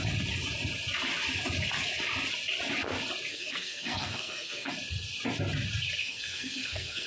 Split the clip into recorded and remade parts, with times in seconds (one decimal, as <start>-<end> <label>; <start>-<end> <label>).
0.0-3.3 recorded; 3.3-4.7 remade; 4.7-6.0 recorded; 6.0-7.1 remade